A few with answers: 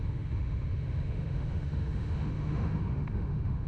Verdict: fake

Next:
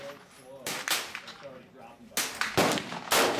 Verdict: real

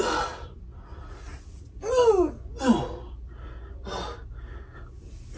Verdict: real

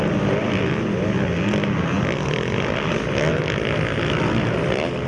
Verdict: real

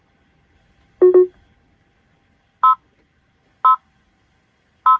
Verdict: real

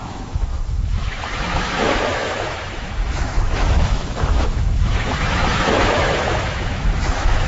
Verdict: fake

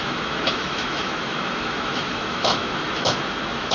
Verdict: fake